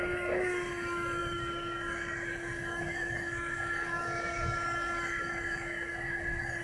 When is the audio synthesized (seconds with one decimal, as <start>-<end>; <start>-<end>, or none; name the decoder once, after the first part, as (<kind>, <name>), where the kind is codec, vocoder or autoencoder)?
0.0-6.6 (codec, DAC)